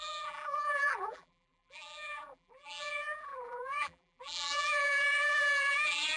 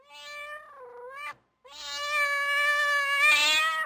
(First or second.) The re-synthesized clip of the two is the first